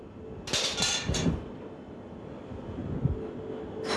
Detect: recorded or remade recorded